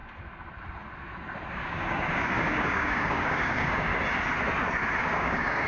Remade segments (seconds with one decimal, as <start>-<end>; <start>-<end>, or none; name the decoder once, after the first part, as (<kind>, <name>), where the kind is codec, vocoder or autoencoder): 1.5-3.9 (codec, DAC); 5.0-5.7